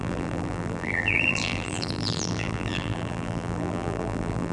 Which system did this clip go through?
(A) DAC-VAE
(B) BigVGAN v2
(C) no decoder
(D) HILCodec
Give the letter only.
B